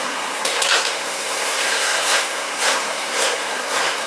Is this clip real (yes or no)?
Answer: no